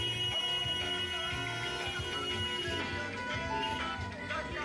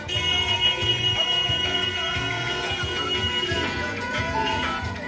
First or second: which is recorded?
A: first